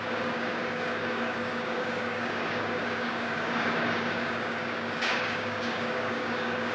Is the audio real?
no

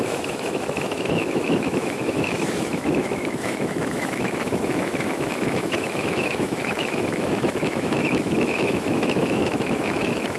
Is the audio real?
no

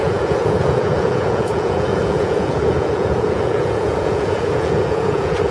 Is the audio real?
no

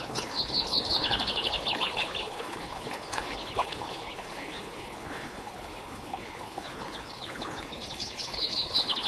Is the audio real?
no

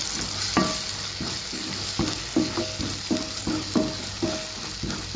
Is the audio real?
yes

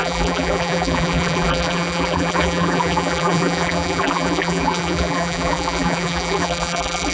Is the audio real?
no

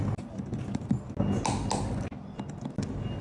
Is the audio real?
yes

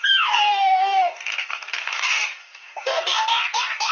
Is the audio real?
no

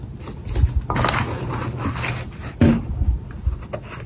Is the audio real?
yes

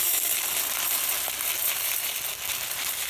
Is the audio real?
yes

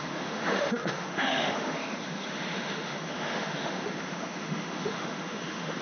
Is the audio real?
no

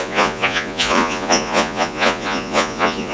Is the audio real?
no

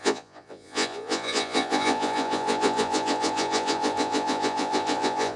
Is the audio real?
no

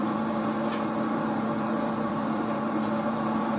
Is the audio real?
no